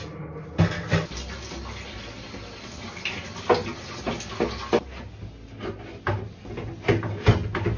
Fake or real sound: real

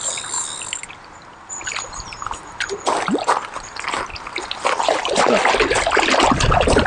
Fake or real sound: real